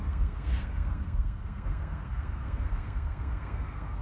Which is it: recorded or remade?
remade